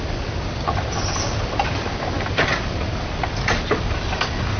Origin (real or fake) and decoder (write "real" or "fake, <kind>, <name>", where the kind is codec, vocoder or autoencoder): real